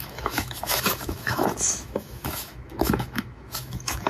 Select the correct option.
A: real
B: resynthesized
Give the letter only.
B